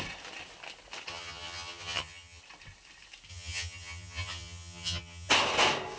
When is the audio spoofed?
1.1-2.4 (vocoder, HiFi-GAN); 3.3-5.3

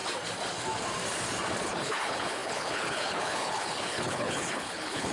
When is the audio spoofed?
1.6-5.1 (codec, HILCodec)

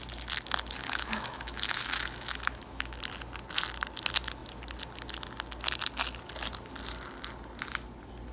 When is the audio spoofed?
0.8-3.0 (autoencoder, DAC-VAE)